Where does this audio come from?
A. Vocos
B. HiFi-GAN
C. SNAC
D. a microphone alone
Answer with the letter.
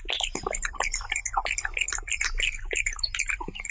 D